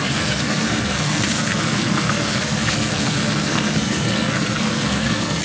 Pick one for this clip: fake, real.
fake